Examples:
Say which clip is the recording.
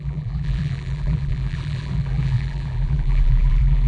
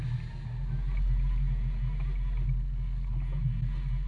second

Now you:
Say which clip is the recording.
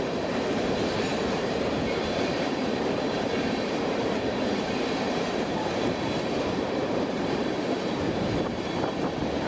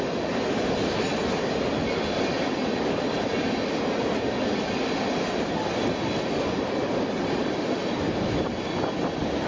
second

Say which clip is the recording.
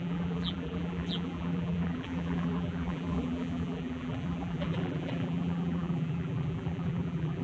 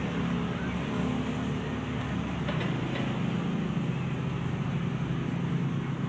second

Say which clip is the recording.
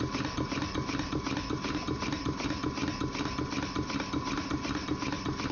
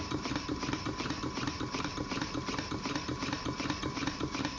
first